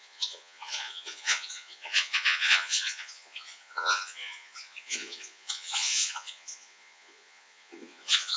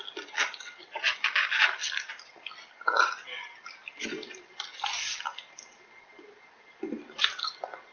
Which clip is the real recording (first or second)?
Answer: second